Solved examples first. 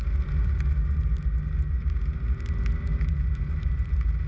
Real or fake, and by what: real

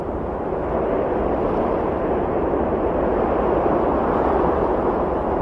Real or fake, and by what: real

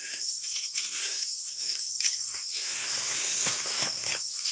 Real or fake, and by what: fake, codec, SNAC